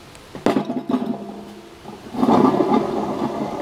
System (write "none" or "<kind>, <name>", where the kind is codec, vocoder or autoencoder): none